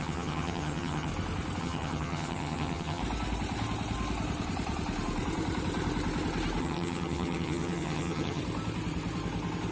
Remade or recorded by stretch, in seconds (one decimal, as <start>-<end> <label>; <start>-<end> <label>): 0.0-1.1 remade; 1.1-1.6 recorded; 1.6-3.0 remade; 3.0-6.6 recorded; 6.6-8.4 remade; 8.4-9.7 recorded